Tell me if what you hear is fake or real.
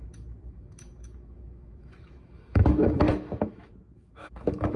fake